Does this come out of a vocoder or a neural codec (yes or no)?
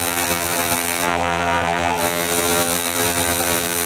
yes